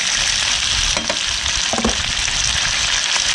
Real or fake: real